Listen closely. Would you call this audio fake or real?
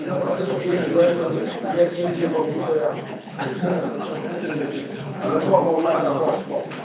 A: fake